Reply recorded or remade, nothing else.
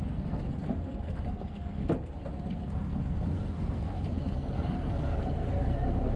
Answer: remade